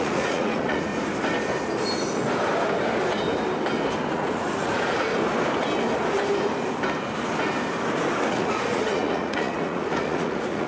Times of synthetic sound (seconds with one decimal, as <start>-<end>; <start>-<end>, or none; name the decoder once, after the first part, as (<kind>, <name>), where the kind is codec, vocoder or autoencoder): 0.0-0.9 (vocoder, Vocos); 4.1-5.2; 8.3-10.7